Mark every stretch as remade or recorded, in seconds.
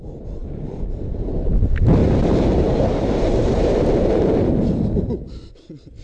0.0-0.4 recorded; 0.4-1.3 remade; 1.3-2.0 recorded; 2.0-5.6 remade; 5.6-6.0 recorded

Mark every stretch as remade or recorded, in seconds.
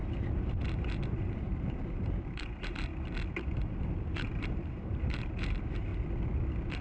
0.0-2.9 remade; 2.9-4.0 recorded; 4.0-5.9 remade; 5.9-6.8 recorded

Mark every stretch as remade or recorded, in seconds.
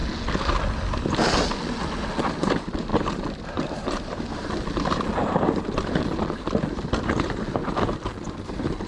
0.0-2.4 recorded; 2.4-8.9 remade